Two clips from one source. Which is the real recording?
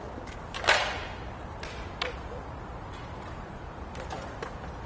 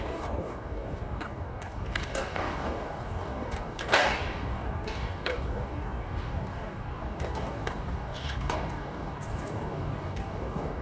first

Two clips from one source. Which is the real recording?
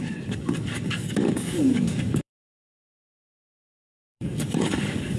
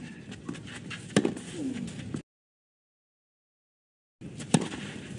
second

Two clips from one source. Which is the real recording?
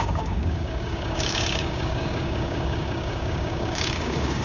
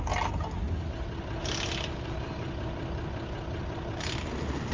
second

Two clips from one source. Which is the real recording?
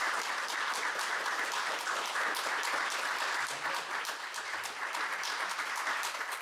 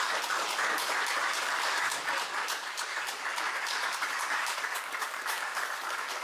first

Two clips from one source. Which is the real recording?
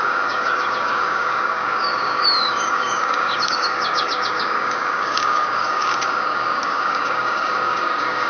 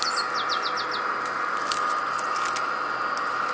second